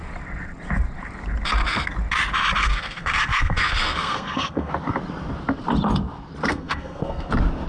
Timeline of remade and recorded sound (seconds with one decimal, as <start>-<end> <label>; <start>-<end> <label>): 0.0-2.6 recorded; 2.6-4.7 remade; 4.7-6.5 recorded; 6.5-7.3 remade; 7.3-7.7 recorded